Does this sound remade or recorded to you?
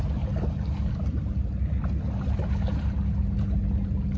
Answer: recorded